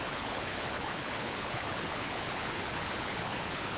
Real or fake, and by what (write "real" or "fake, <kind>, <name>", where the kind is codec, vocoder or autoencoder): fake, codec, HILCodec